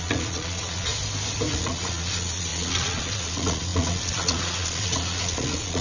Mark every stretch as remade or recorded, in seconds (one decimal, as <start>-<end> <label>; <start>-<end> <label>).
0.0-0.9 remade; 0.9-1.5 recorded; 1.5-5.8 remade